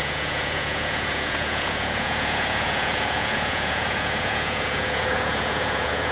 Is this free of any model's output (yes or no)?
no